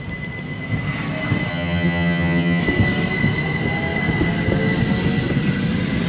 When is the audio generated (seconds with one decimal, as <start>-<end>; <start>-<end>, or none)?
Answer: 1.5-2.6